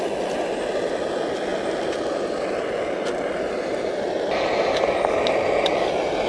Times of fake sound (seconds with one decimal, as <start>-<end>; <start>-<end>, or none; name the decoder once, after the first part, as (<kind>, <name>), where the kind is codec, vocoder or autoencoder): none